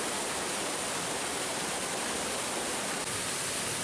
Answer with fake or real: real